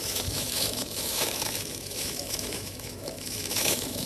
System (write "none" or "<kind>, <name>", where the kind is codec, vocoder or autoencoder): autoencoder, DAC-VAE